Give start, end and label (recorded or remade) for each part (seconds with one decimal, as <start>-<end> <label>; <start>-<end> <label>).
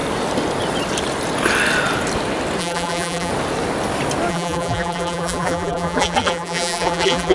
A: 0.0-2.6 recorded; 2.6-3.3 remade; 3.3-4.3 recorded; 4.3-7.3 remade